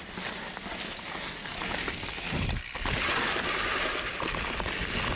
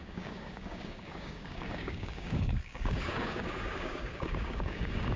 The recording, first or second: first